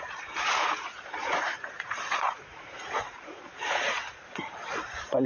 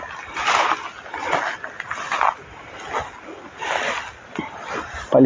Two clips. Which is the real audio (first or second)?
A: second